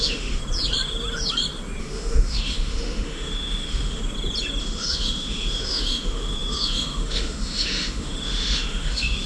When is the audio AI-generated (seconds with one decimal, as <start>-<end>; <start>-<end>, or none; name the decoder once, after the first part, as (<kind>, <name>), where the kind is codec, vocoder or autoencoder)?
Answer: 0.0-0.4 (autoencoder, DAC-VAE); 1.8-4.0; 4.6-9.3